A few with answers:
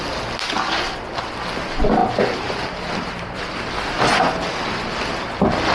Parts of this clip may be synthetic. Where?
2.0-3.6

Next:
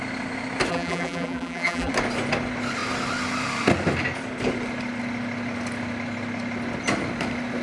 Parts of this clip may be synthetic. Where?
0.7-1.9